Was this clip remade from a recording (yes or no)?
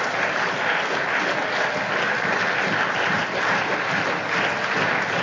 no